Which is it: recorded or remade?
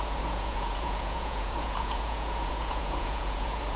remade